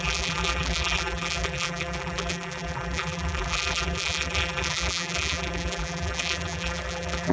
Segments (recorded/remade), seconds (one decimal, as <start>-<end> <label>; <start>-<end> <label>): 0.0-7.3 remade